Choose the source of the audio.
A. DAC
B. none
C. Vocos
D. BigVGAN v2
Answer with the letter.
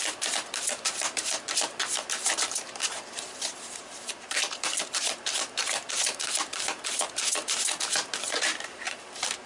D